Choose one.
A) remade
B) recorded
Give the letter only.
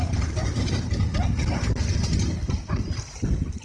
B